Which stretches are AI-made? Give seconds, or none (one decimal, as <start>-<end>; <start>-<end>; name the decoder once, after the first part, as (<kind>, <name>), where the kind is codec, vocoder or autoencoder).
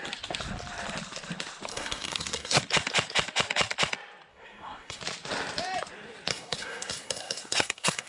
1.7-2.6 (codec, SNAC); 4.3-5.0; 6.3-8.1